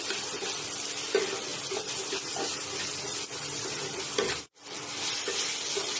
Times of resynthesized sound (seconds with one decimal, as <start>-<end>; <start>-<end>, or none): none